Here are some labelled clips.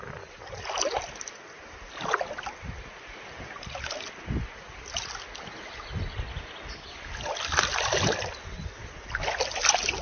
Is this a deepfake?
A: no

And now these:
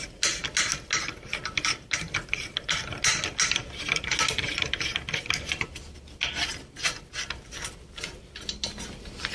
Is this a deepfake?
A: no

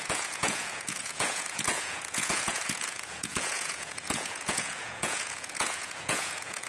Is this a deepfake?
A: yes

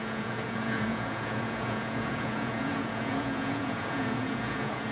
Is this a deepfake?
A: yes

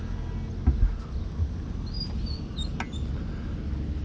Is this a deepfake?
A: no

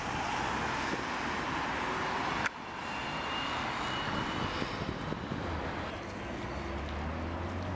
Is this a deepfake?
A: no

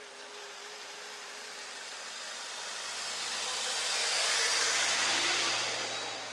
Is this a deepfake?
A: no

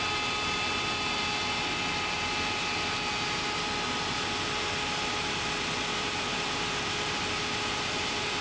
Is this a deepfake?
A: no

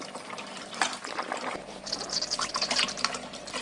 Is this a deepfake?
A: yes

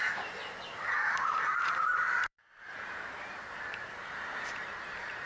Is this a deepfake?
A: yes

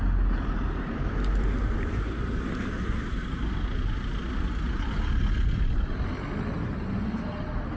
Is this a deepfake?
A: no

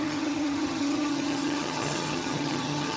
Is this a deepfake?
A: yes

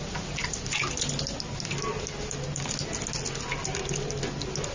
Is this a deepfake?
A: no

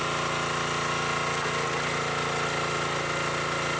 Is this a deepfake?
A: no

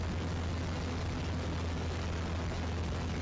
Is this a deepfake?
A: no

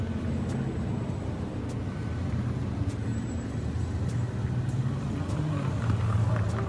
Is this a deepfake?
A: no